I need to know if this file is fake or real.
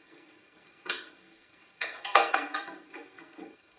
fake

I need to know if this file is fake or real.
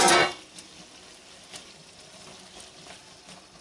real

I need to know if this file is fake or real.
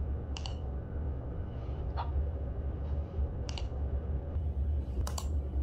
fake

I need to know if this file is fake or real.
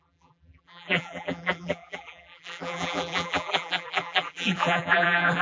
fake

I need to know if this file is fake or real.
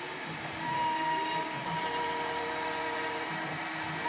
fake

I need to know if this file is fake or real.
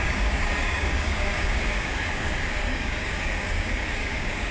fake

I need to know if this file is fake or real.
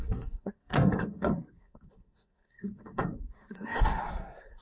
fake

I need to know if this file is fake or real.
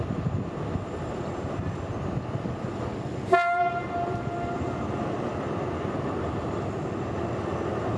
real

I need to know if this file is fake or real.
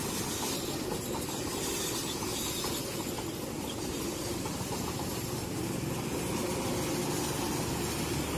real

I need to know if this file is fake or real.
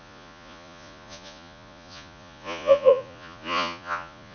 fake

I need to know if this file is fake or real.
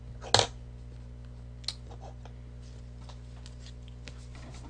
real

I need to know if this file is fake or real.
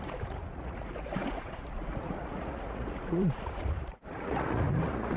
fake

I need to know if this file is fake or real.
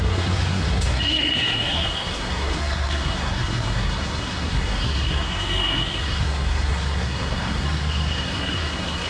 fake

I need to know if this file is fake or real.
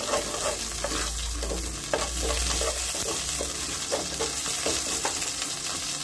real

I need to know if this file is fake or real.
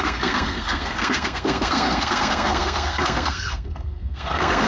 fake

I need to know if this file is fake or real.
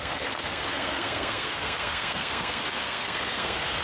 fake